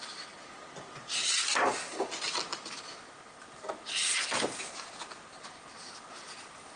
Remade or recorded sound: recorded